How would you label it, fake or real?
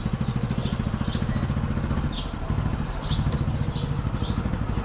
real